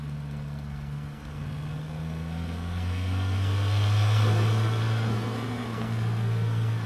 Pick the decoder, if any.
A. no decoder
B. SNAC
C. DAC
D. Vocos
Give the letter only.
B